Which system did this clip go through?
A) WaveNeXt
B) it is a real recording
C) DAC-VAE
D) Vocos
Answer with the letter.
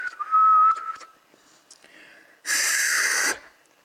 B